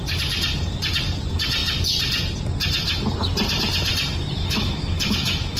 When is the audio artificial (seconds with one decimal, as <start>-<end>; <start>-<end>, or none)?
4.4-5.6